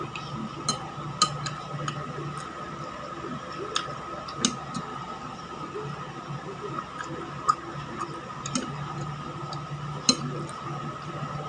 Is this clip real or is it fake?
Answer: real